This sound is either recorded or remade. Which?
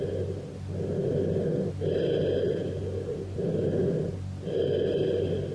recorded